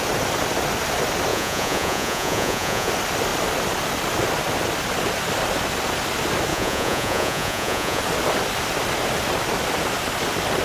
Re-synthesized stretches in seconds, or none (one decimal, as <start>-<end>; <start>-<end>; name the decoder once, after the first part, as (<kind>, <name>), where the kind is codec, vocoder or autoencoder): 1.3-2.9 (vocoder, Vocos); 6.5-8.0

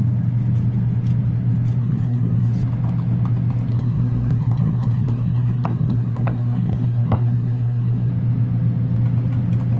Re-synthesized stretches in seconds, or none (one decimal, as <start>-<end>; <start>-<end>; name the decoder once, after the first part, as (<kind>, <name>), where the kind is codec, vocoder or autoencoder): 1.8-2.5 (codec, SNAC); 3.7-8.1

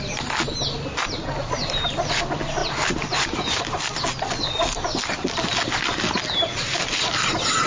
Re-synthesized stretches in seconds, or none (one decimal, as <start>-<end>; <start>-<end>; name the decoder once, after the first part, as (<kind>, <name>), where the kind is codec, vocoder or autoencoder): none

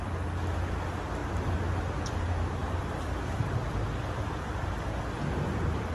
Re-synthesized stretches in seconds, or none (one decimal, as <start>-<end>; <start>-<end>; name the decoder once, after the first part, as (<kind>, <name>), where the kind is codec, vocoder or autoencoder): 2.6-3.4 (vocoder, BigVGAN v2)